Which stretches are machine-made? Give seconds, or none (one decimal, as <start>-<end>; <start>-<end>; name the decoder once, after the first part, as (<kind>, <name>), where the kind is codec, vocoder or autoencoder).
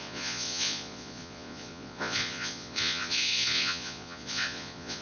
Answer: 0.0-5.0 (vocoder, Vocos)